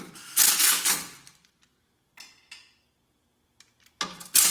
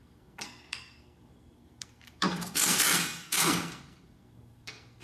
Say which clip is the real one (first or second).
first